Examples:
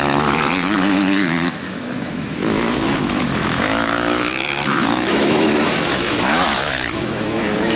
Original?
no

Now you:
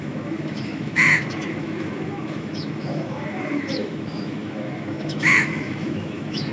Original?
no